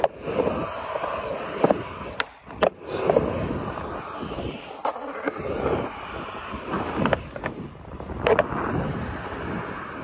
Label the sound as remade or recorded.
recorded